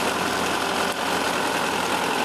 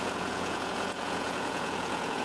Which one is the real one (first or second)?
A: first